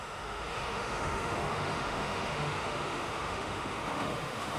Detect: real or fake fake